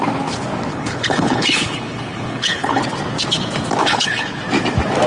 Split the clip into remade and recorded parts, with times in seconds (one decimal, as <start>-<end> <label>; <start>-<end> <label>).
0.0-0.7 recorded; 0.7-2.8 remade; 2.8-3.8 recorded; 3.8-4.4 remade; 4.4-5.1 recorded